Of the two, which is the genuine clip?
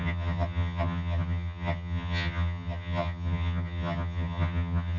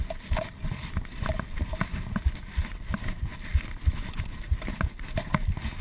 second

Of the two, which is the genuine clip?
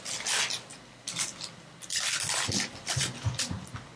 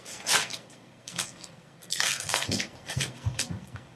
first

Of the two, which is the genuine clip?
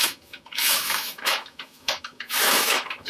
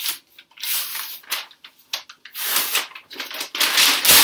second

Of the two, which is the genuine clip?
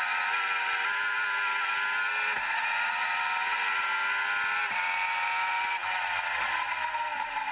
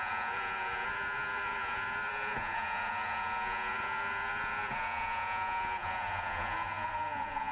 first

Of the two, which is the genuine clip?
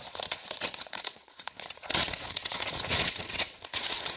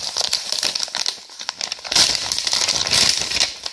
second